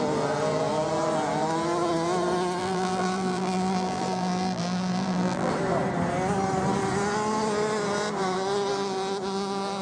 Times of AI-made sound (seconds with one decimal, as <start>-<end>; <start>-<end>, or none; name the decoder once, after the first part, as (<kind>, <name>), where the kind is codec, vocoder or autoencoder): 2.6-5.5 (vocoder, BigVGAN v2)